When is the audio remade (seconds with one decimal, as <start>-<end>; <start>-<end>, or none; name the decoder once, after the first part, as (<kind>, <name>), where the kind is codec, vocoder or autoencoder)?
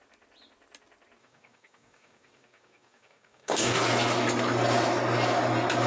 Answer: 1.2-3.8 (codec, DAC)